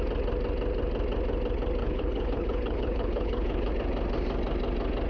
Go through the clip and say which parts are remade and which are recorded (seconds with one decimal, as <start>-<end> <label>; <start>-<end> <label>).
0.0-1.8 recorded; 1.8-3.7 remade; 3.7-5.1 recorded